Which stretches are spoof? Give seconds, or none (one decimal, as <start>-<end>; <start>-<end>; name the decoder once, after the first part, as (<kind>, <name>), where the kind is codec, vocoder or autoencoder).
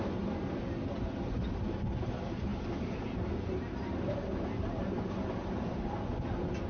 none